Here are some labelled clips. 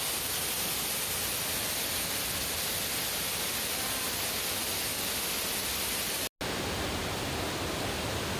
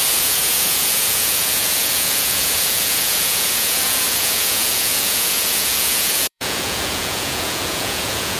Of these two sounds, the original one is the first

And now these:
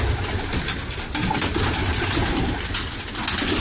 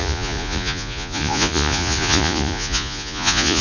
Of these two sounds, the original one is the first